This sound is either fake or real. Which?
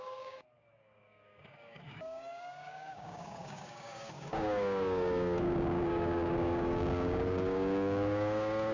fake